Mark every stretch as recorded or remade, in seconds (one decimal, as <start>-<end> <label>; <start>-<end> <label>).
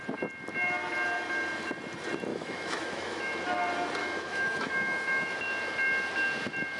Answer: 0.0-2.3 recorded; 2.3-3.3 remade; 3.3-4.0 recorded; 4.0-5.4 remade; 5.4-6.8 recorded